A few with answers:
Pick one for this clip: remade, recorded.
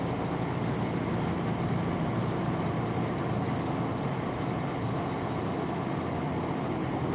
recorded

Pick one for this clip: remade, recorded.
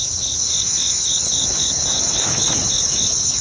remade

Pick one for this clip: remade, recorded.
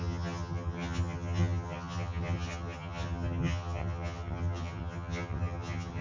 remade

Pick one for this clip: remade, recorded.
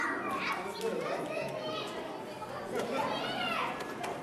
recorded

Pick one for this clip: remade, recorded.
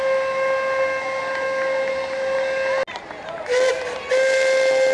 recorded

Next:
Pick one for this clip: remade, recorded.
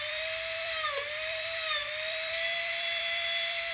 remade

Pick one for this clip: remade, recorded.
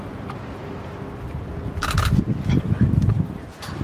recorded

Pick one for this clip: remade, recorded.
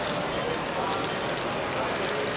recorded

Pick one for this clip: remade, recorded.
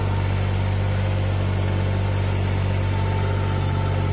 recorded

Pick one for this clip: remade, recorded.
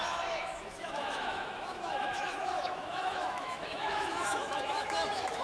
remade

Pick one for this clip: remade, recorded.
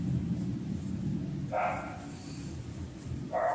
recorded